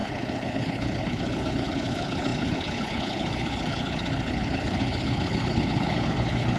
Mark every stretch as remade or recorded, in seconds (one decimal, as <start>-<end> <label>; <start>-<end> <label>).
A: 0.0-6.6 remade